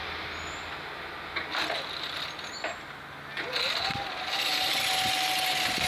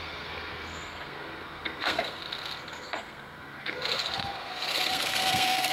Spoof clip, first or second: second